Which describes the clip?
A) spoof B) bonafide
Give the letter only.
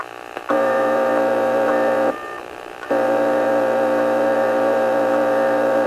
A